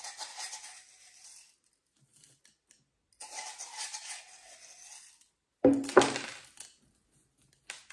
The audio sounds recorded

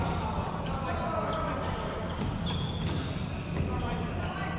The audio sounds recorded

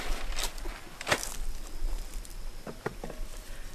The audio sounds recorded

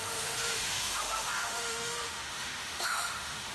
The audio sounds remade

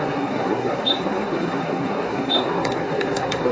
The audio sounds remade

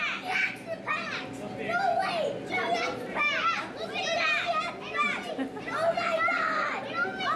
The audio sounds recorded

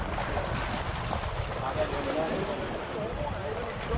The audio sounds recorded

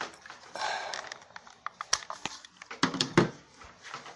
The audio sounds recorded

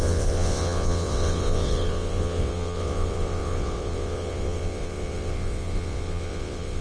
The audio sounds remade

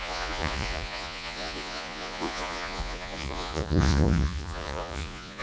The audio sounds remade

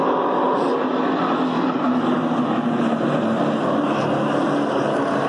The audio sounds recorded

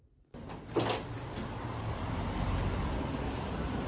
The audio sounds recorded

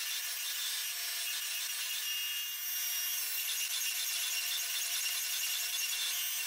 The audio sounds recorded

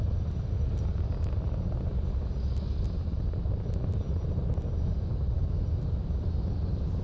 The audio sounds recorded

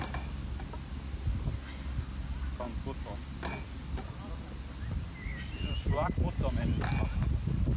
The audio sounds recorded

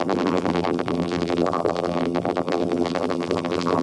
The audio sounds remade